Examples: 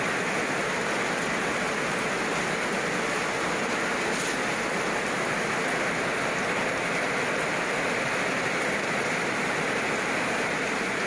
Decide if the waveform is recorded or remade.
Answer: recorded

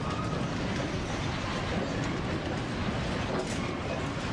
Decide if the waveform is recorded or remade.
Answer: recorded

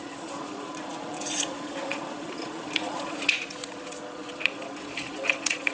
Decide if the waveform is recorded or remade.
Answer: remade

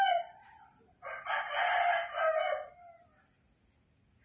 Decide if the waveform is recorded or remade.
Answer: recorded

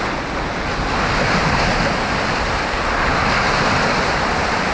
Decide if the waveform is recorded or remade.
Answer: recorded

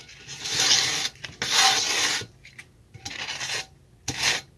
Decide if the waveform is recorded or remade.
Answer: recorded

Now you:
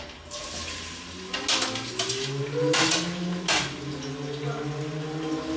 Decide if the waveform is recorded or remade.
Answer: recorded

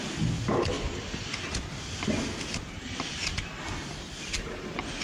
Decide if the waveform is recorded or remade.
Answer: recorded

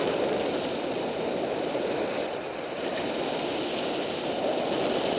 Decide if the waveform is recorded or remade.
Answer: recorded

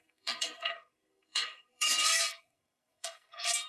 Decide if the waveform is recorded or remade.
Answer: remade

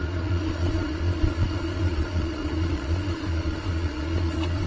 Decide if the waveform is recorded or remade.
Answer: remade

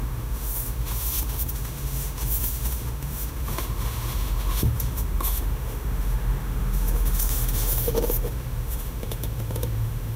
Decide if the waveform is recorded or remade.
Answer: remade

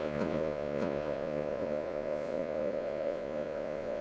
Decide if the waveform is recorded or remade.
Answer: remade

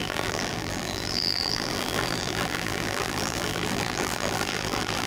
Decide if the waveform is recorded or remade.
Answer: remade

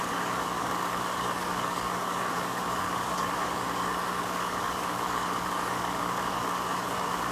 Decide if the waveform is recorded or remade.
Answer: remade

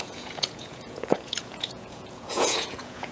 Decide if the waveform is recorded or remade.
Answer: remade